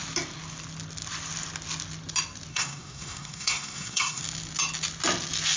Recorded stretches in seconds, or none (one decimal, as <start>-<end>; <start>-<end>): 0.0-2.5; 4.2-5.6